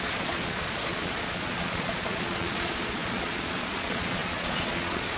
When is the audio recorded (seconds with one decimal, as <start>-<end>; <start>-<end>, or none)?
none